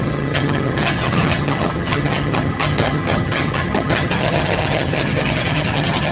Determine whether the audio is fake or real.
fake